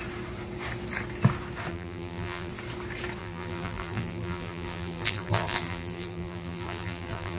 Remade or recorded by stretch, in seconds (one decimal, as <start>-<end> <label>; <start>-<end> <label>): 0.0-1.7 recorded; 1.7-2.5 remade; 2.5-3.2 recorded; 3.2-7.4 remade